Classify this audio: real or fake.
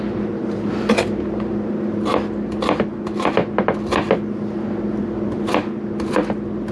real